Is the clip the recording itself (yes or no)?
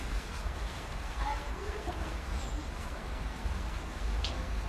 no